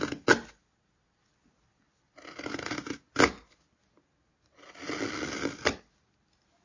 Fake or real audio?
real